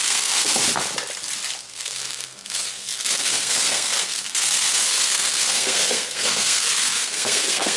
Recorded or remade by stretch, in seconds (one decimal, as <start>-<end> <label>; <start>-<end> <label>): 0.0-0.5 remade; 0.5-1.6 recorded; 1.6-7.8 remade